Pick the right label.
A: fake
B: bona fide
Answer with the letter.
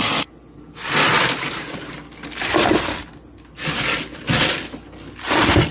B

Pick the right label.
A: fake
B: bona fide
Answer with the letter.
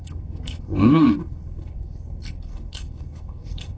A